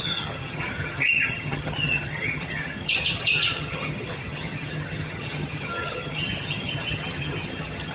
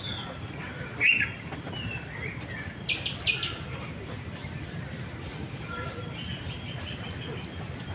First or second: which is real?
second